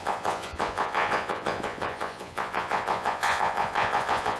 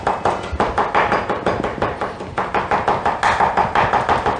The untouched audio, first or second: second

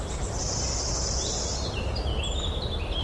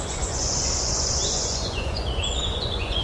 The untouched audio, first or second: first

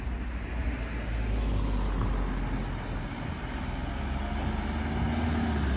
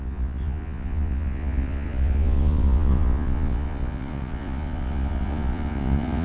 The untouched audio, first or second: first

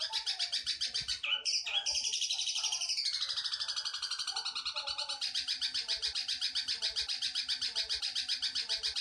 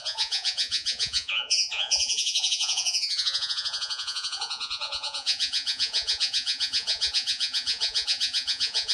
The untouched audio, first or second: first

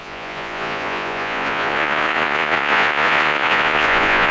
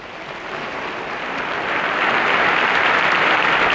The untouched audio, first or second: second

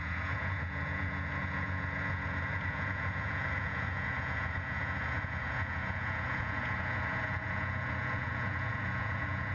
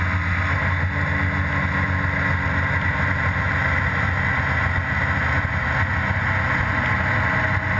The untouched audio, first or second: second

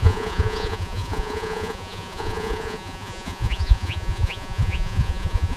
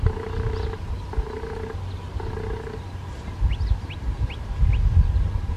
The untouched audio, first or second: second